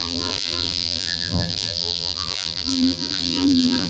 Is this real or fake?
fake